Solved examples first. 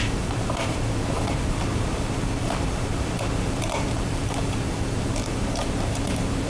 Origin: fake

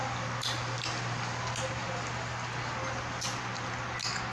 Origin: real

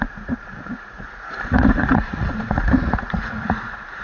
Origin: fake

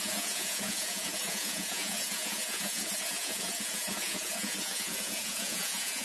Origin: fake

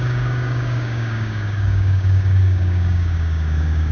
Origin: fake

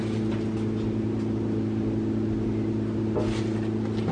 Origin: real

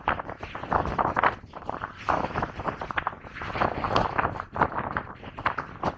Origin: fake